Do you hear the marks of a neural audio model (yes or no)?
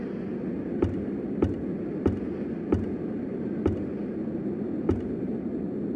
no